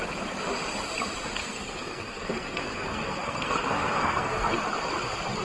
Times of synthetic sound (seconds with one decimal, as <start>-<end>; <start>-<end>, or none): 1.4-4.6